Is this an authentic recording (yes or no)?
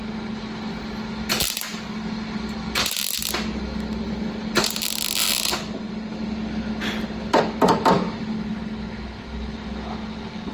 yes